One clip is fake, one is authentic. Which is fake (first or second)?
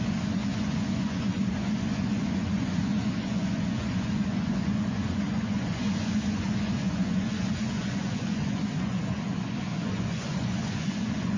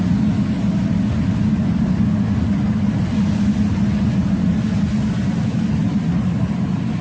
first